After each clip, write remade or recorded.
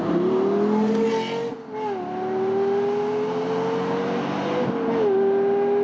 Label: recorded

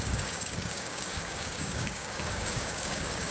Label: remade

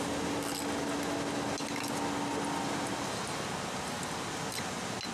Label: recorded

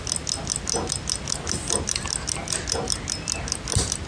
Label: recorded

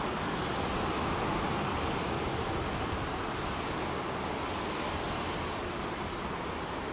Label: recorded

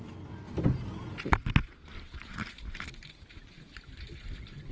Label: recorded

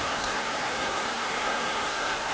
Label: remade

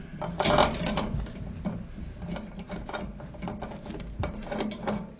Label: recorded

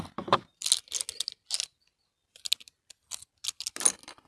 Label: recorded